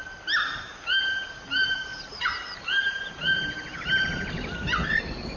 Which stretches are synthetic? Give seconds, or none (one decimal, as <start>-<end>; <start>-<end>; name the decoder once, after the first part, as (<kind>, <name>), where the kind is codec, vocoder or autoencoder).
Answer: none